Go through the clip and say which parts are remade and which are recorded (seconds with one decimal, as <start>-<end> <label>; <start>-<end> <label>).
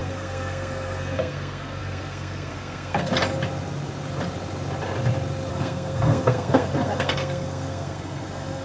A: 0.0-3.1 remade; 3.1-5.5 recorded; 5.5-8.6 remade